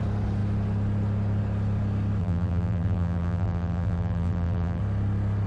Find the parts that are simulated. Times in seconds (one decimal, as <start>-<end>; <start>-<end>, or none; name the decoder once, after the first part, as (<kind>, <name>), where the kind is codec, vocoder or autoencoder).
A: 2.2-4.8 (vocoder, BigVGAN v2)